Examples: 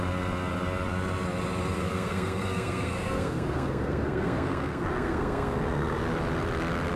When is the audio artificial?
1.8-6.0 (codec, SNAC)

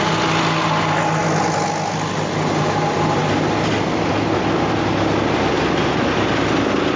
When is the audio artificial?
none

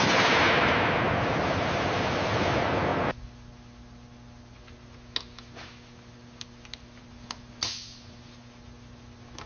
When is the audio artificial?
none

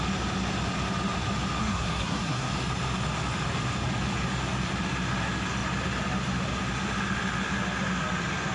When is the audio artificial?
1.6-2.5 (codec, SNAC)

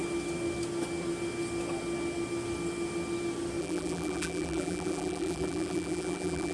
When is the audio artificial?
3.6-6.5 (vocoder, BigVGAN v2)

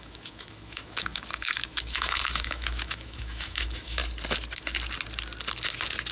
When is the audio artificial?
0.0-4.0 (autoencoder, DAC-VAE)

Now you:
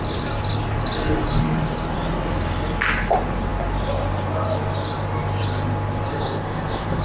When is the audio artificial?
6.1-7.0 (codec, SNAC)